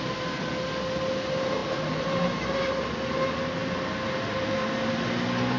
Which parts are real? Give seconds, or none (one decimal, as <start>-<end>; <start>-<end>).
0.0-5.6